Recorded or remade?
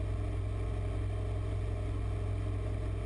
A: recorded